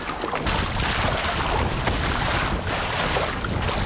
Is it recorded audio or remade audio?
recorded